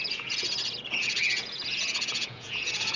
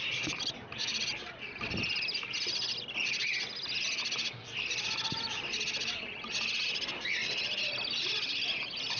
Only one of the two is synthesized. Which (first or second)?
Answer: first